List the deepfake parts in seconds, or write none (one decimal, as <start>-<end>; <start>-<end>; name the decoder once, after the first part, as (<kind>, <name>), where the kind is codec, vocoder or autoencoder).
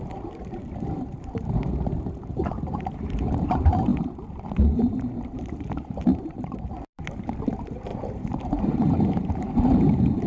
0.0-10.3 (vocoder, BigVGAN v2)